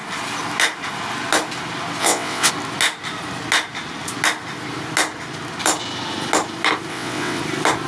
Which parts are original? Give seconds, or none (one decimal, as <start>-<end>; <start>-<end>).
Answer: 0.0-2.0; 2.5-6.9; 7.4-7.9